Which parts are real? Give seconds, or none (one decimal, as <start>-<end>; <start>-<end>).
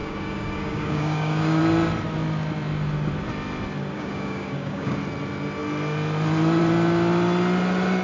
1.6-3.8; 5.0-8.0